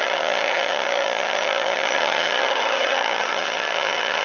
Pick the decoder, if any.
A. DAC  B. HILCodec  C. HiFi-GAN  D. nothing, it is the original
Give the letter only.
C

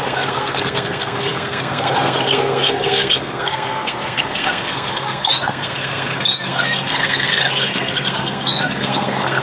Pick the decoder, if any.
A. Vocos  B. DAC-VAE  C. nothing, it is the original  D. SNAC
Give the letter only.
D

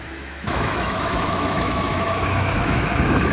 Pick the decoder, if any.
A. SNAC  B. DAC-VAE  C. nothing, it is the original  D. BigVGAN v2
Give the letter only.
B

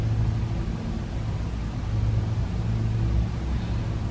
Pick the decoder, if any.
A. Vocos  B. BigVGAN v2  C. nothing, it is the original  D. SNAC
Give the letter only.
C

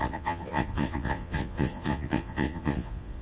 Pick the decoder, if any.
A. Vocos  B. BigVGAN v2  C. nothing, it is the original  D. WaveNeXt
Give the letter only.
A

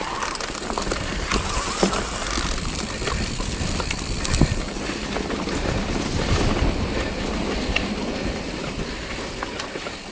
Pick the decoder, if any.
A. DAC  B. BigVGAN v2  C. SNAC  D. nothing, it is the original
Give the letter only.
B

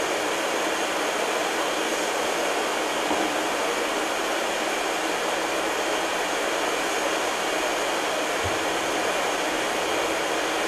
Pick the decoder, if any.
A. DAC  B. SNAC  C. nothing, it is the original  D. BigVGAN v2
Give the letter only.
C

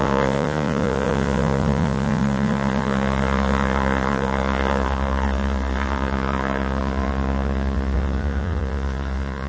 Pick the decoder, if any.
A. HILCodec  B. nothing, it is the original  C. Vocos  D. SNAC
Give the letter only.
C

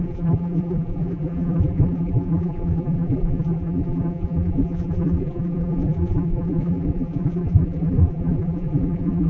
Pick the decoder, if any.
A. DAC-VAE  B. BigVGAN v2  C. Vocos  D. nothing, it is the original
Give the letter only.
B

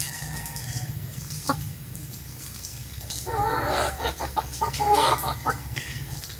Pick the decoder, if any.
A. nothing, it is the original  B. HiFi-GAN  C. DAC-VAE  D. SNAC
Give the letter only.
D